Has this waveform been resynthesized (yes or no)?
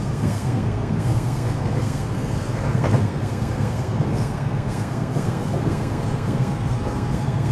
yes